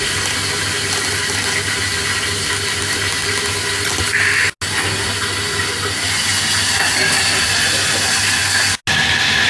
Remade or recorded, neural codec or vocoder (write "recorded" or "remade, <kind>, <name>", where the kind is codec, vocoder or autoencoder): recorded